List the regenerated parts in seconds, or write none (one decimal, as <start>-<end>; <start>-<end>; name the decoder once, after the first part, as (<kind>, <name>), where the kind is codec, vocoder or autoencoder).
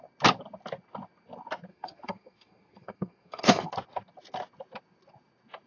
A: 1.7-3.7 (codec, SNAC)